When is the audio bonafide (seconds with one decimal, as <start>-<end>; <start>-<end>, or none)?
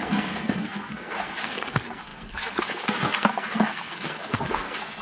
none